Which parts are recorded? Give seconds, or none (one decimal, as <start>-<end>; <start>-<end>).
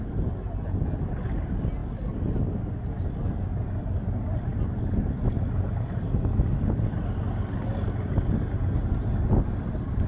0.0-10.1